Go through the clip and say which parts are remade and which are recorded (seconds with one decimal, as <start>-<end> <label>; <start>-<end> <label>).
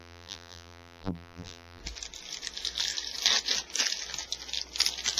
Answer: 0.0-1.8 remade; 1.8-5.2 recorded